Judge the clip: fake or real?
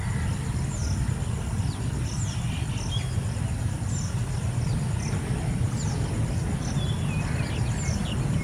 real